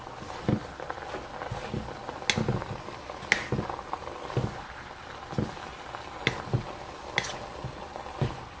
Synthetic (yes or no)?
no